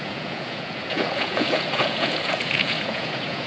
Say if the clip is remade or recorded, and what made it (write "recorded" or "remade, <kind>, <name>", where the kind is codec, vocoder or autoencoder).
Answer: remade, vocoder, Vocos